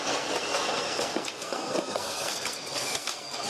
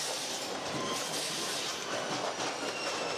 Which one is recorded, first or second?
second